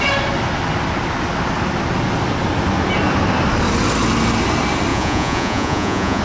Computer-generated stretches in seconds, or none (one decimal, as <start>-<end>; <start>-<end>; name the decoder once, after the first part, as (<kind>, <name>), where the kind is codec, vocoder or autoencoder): 4.9-6.2 (vocoder, Vocos)